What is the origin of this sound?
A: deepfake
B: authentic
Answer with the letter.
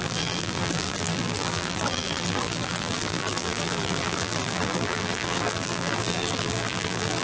A